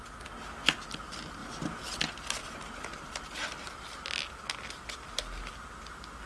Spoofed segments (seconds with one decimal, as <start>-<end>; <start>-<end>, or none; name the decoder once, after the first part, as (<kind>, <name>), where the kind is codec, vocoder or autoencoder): 2.4-4.7 (vocoder, BigVGAN v2)